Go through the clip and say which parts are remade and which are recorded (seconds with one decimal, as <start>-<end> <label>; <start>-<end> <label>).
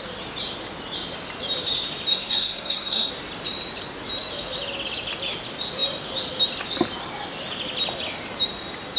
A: 0.0-2.1 recorded; 2.1-3.1 remade; 3.1-9.0 recorded